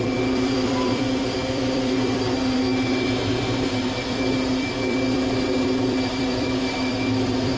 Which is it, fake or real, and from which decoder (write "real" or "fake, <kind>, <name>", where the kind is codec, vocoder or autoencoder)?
fake, vocoder, BigVGAN v2